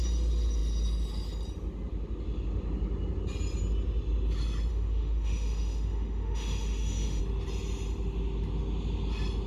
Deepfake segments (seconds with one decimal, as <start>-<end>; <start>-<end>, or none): 4.7-7.2